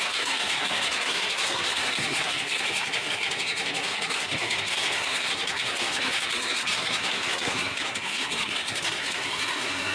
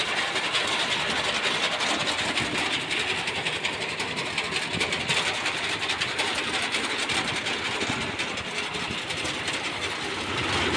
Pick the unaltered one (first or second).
second